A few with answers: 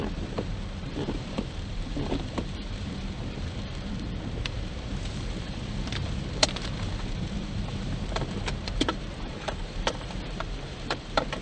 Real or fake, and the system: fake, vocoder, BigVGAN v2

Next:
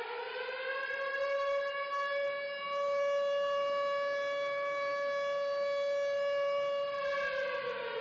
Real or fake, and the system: real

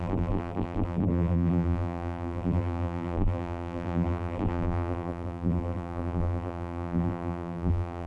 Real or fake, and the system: fake, vocoder, BigVGAN v2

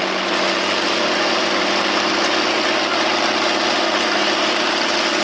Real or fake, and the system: real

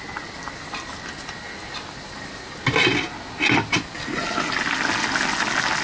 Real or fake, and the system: real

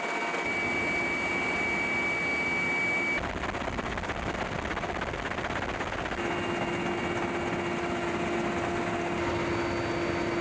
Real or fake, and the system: real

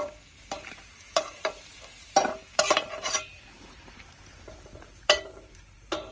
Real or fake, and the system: fake, vocoder, BigVGAN v2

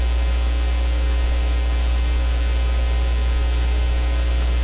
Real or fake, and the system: real